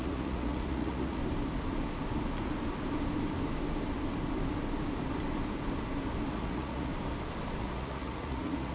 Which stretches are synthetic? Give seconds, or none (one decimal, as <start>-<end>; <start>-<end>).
0.0-1.2; 6.3-6.9; 7.6-8.7